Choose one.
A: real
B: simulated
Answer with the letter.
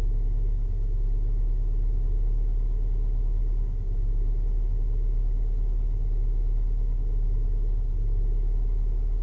A